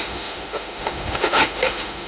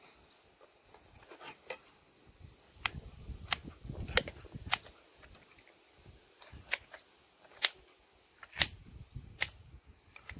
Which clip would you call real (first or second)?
second